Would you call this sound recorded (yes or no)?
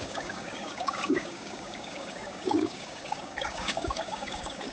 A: no